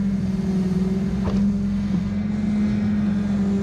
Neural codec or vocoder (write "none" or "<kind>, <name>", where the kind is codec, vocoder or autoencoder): none